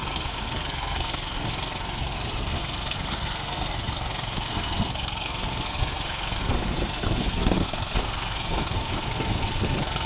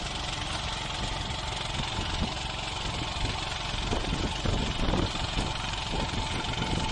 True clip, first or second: second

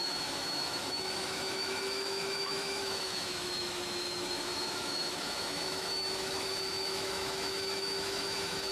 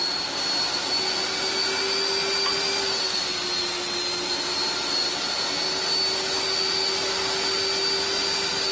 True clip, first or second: second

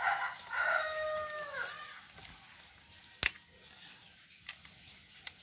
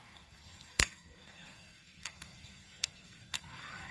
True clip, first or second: first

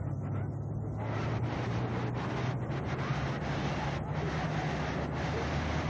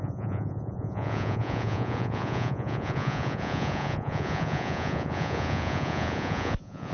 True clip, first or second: first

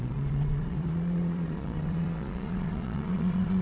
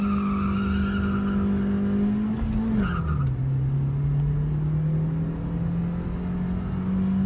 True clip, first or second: second